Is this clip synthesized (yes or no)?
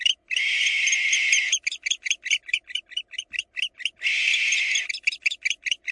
no